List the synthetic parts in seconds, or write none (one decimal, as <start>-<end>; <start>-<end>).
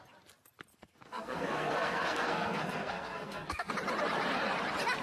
0.7-3.7